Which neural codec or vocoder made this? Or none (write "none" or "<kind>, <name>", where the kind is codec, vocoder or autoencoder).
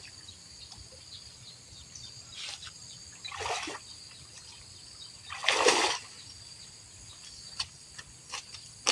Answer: none